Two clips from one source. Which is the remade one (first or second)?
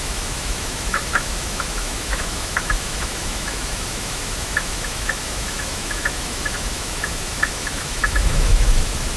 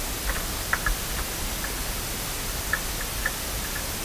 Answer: first